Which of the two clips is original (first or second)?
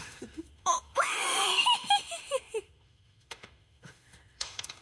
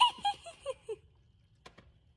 second